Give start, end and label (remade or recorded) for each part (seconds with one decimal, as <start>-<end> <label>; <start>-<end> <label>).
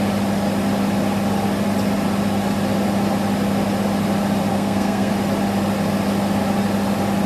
0.0-4.5 recorded; 4.5-5.1 remade; 5.1-7.3 recorded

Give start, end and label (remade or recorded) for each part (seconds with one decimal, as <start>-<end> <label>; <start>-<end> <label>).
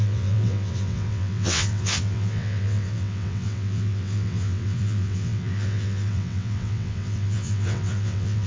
0.0-8.5 remade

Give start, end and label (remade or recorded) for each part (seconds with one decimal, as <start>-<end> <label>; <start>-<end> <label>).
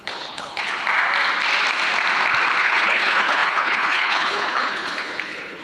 0.0-0.8 remade; 0.8-2.6 recorded; 2.6-5.6 remade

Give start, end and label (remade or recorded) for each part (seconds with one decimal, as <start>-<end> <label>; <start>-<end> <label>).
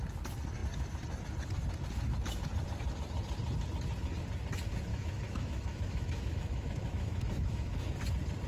0.0-4.9 recorded; 4.9-8.0 remade; 8.0-8.5 recorded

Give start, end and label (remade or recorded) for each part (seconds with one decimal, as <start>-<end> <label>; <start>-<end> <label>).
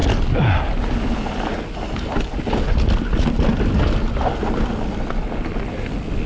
0.0-6.3 recorded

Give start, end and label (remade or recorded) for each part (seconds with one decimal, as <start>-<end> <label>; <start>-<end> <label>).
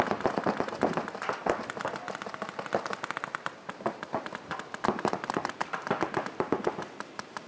0.0-7.5 recorded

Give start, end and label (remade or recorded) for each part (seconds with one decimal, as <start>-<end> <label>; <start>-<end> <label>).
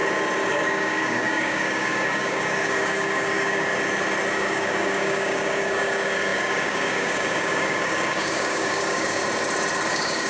0.0-0.5 recorded; 0.5-3.7 remade; 3.7-4.3 recorded; 4.3-9.2 remade; 9.2-9.9 recorded; 9.9-10.3 remade